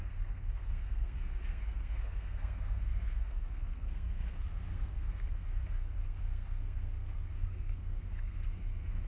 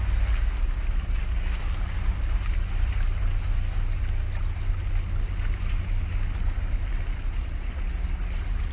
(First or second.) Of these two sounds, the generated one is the first